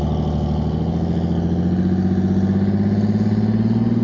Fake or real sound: real